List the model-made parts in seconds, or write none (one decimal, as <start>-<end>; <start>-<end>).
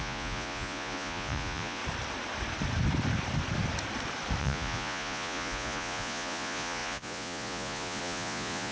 0.0-1.8; 4.4-8.7